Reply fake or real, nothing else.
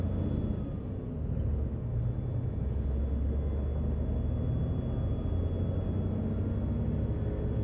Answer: real